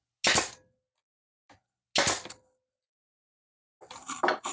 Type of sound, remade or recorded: recorded